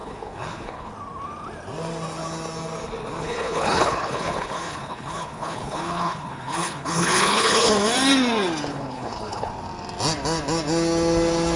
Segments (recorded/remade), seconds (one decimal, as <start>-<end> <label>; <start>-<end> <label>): 0.0-0.9 remade; 0.9-3.2 recorded; 3.2-7.7 remade; 7.7-8.7 recorded; 8.7-9.5 remade; 9.5-11.6 recorded